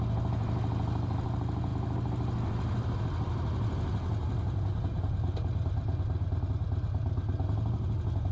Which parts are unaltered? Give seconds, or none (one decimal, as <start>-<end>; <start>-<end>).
0.0-8.3